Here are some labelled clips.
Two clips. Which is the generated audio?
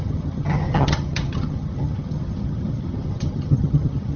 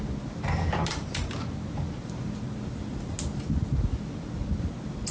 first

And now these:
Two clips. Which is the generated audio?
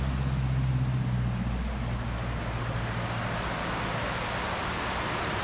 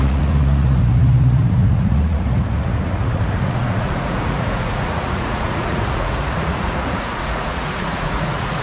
second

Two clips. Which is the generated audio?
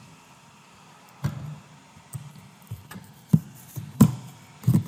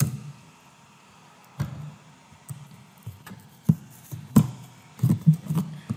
first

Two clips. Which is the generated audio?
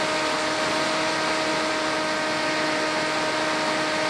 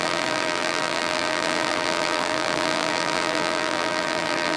second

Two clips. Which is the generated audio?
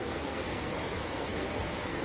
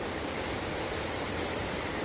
first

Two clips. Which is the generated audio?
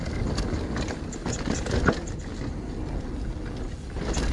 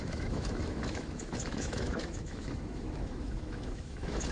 second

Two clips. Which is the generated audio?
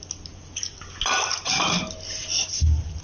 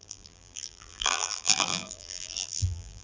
second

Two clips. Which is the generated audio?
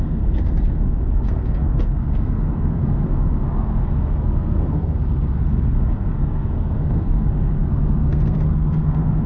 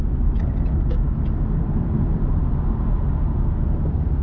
first